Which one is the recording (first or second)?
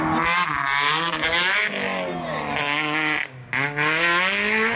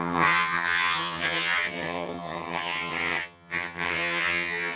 first